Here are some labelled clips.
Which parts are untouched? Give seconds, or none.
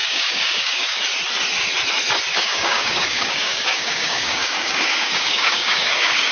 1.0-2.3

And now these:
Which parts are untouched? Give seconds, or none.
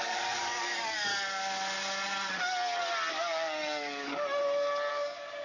1.1-3.1; 4.4-4.9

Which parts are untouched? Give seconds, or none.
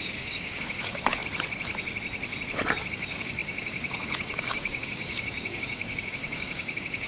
1.2-2.9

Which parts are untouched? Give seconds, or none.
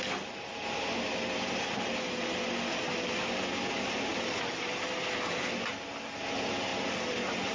0.0-7.5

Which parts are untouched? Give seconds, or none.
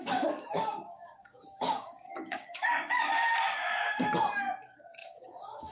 3.7-4.4